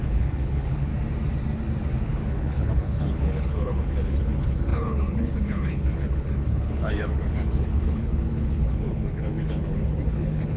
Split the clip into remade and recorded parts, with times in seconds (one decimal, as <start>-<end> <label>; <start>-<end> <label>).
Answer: 0.0-0.9 remade; 0.9-2.0 recorded; 2.0-10.6 remade